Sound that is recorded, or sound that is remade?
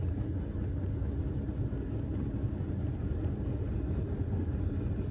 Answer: recorded